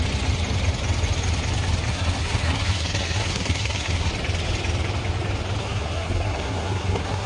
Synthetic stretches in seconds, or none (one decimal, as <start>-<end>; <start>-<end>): 1.9-4.1; 5.6-7.3